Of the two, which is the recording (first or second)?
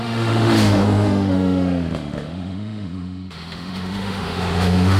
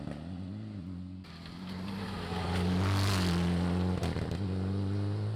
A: second